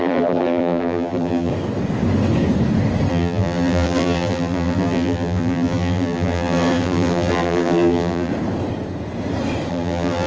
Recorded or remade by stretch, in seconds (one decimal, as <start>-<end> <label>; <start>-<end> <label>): 0.0-1.5 remade; 1.5-3.1 recorded; 3.1-8.3 remade; 8.3-9.7 recorded; 9.7-10.3 remade